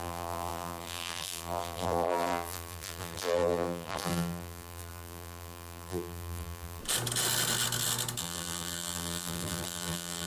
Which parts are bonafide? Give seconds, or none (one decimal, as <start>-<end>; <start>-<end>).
6.8-8.2